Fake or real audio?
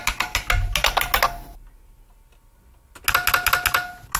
real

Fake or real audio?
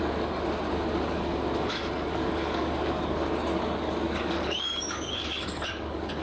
fake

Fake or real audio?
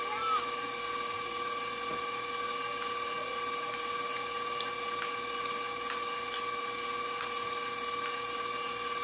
real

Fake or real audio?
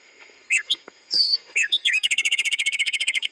fake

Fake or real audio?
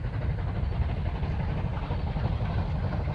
real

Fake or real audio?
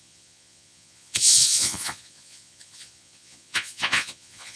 fake